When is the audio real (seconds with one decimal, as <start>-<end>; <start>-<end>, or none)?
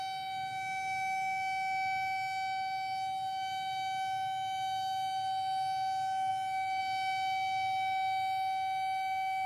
0.0-9.5